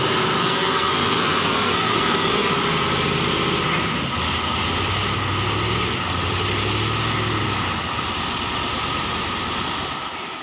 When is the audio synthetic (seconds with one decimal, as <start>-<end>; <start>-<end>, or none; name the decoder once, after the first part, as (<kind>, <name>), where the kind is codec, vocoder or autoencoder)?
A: 0.4-2.5 (codec, SNAC)